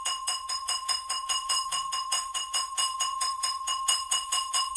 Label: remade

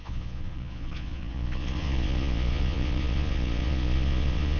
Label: remade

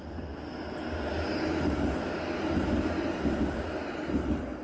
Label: recorded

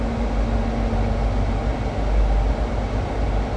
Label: recorded